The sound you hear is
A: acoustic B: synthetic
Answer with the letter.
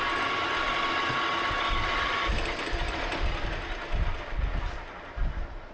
A